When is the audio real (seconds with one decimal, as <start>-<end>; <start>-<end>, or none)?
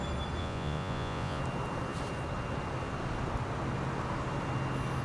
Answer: 0.0-0.4; 1.4-5.0